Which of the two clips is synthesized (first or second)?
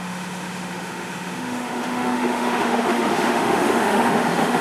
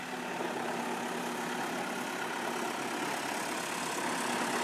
first